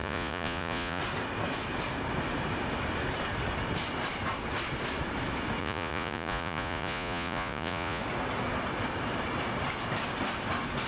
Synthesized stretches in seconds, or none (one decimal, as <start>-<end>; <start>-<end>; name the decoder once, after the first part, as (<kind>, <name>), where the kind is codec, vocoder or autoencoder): 0.0-1.0 (vocoder, Vocos); 5.6-8.0